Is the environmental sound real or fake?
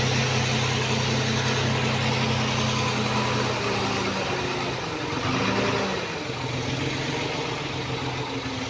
real